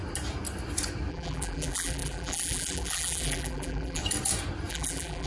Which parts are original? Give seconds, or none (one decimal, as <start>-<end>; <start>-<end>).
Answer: 0.0-1.1; 4.0-4.7